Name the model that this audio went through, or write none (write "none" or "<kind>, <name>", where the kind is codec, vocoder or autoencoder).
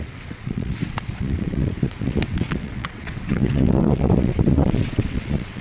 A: vocoder, WaveNeXt